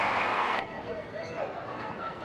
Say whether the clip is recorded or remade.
remade